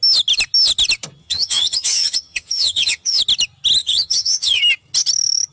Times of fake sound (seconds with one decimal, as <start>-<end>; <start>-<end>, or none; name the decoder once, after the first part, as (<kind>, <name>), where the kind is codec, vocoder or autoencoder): 1.2-3.2 (vocoder, HiFi-GAN); 3.8-4.6